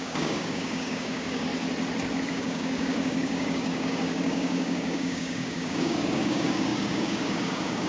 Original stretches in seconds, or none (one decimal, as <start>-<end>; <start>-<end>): 1.5-2.3